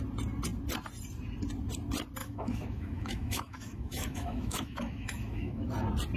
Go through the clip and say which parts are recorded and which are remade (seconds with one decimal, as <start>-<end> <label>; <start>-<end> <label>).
0.0-2.2 recorded; 2.2-5.7 remade; 5.7-6.2 recorded